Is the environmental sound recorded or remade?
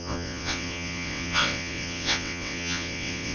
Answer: remade